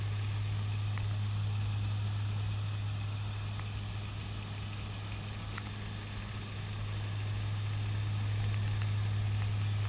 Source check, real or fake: real